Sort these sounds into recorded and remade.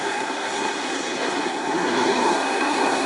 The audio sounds remade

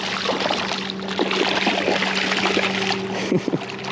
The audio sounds recorded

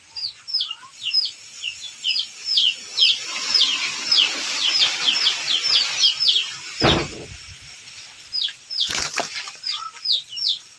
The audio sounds recorded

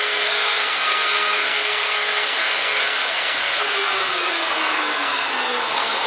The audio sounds remade